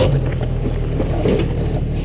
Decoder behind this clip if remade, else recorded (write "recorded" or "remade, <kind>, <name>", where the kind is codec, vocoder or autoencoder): recorded